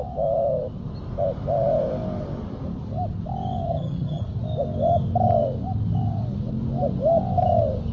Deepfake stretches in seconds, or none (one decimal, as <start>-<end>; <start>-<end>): 3.7-4.2